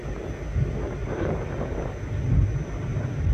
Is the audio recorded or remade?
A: recorded